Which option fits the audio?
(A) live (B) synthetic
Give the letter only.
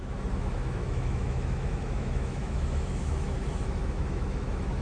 B